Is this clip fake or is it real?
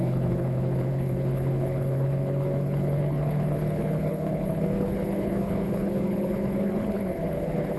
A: fake